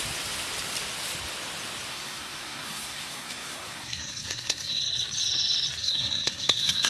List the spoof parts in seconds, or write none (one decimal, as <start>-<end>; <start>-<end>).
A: 1.9-4.8; 5.8-6.9